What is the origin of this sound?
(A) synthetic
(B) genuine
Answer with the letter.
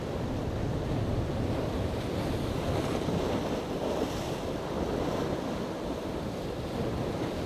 B